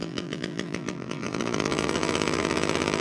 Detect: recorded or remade remade